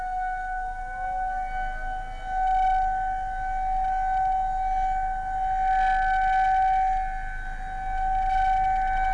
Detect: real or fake real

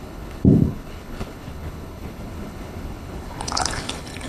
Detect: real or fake fake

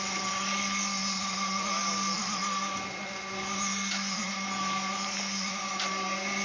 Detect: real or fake real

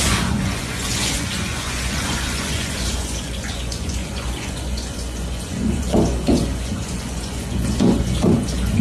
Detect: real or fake fake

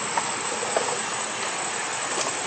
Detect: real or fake real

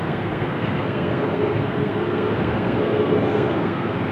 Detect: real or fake fake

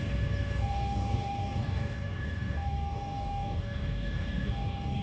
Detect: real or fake fake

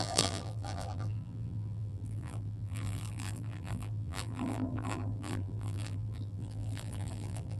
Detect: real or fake fake